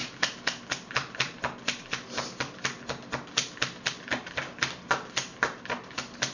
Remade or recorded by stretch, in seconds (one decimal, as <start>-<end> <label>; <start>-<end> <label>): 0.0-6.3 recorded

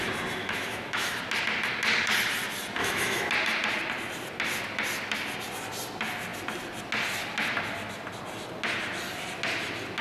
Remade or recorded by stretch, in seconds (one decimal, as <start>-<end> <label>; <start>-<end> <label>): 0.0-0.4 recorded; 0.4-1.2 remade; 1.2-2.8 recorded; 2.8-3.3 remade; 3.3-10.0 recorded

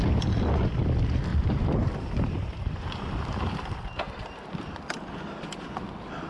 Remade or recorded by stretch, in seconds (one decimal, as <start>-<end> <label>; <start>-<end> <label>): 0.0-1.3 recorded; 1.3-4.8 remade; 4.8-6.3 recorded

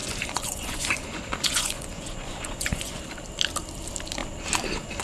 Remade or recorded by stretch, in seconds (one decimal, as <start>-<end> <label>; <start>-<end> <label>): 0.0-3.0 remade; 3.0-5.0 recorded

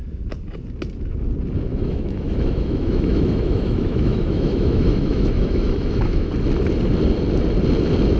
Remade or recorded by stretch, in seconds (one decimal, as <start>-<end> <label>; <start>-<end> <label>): 0.0-1.7 recorded; 1.7-6.3 remade; 6.3-8.2 recorded